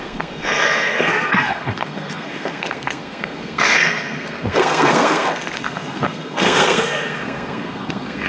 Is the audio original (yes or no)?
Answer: no